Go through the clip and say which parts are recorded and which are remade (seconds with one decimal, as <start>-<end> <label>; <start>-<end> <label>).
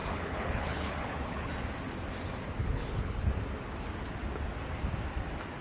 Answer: 0.0-1.5 remade; 1.5-2.6 recorded; 2.6-3.3 remade; 3.3-5.6 recorded